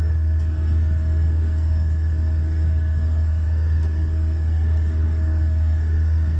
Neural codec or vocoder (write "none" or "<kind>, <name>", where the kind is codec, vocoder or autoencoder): codec, SNAC